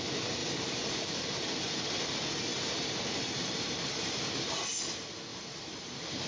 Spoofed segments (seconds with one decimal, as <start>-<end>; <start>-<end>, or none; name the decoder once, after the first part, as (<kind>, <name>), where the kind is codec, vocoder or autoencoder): 0.4-1.2 (vocoder, BigVGAN v2); 2.5-4.2; 5.3-6.3